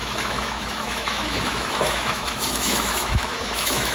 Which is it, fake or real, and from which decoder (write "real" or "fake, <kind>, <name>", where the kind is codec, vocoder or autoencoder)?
fake, autoencoder, DAC-VAE